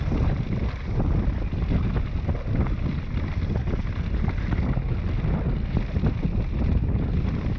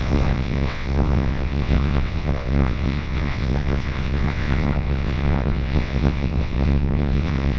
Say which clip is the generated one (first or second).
second